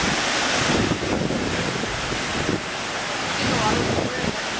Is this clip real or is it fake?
real